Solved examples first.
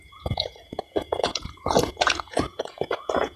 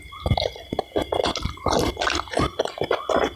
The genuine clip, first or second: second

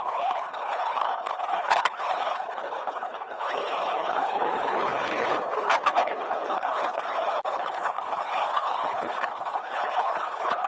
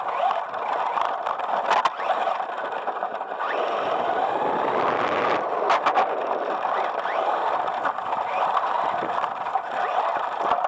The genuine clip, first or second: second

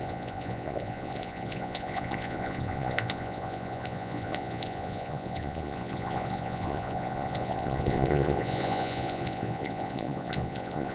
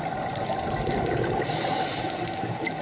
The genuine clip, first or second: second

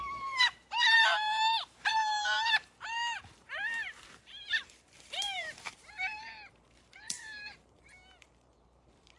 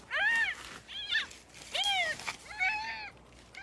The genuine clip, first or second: second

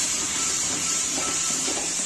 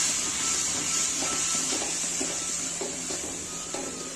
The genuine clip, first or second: second